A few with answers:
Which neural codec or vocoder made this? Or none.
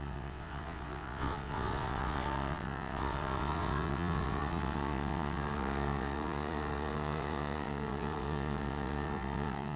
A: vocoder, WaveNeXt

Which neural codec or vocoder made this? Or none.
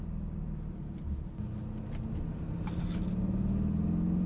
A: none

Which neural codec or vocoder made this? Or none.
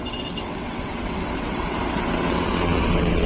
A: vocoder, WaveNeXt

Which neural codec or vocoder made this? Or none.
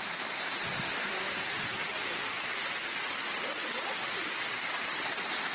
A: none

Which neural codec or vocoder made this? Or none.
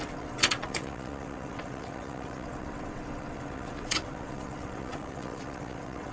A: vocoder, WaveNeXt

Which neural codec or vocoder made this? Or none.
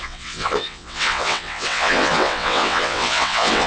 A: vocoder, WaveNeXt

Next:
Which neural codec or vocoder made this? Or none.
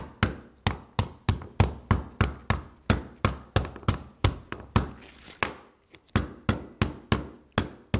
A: none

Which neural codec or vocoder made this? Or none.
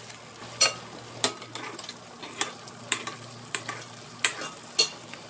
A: none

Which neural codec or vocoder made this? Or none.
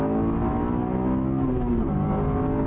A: none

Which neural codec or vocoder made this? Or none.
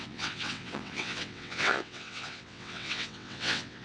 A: vocoder, WaveNeXt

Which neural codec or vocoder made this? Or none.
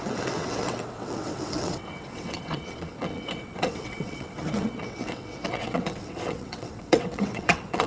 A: vocoder, WaveNeXt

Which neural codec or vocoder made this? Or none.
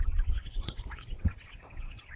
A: vocoder, WaveNeXt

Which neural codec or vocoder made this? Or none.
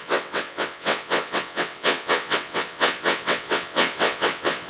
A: vocoder, WaveNeXt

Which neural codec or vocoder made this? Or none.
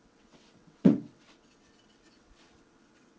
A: vocoder, WaveNeXt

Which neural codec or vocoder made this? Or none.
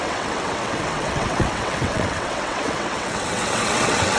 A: vocoder, WaveNeXt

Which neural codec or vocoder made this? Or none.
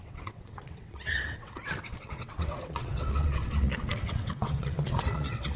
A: vocoder, WaveNeXt